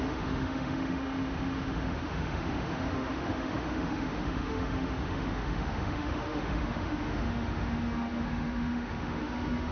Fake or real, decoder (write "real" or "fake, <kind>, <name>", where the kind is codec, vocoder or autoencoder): fake, autoencoder, DAC-VAE